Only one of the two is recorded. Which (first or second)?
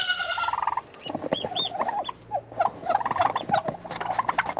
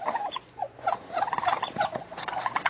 first